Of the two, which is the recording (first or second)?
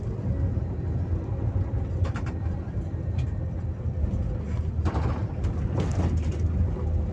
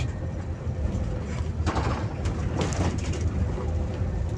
first